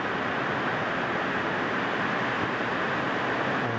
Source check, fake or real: real